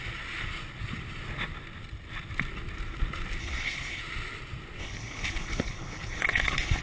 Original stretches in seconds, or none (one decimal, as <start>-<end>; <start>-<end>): 0.0-3.4; 4.0-4.8